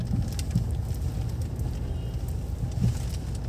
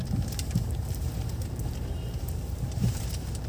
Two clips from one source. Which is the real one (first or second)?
first